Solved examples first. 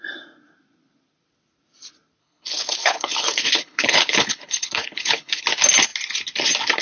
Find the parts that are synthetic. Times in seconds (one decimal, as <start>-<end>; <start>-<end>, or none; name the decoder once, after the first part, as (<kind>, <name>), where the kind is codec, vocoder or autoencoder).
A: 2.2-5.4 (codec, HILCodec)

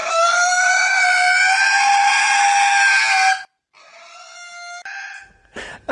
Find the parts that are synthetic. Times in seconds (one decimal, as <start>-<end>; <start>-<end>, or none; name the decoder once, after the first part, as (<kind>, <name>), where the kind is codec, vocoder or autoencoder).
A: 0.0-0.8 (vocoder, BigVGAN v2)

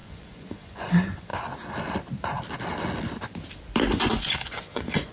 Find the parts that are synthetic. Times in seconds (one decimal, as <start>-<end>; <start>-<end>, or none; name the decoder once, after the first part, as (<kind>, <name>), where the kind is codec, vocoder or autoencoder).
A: 0.0-1.3 (vocoder, Vocos); 4.1-5.1

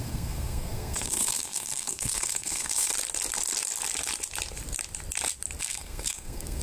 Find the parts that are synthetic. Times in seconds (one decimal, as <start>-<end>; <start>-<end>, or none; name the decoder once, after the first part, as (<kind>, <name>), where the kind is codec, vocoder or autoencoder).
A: 0.0-2.9 (codec, SNAC); 5.6-6.6

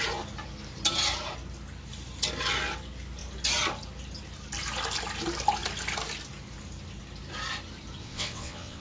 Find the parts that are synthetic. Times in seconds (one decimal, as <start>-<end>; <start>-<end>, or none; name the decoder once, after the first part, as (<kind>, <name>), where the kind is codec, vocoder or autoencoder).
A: 8.0-8.8 (vocoder, WaveNeXt)

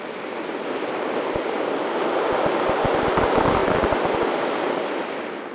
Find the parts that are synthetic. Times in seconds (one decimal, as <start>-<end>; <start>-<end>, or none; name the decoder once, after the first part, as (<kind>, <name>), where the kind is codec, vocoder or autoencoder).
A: none